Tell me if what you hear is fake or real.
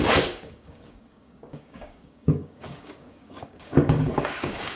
fake